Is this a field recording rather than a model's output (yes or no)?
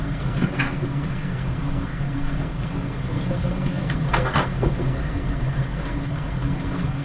no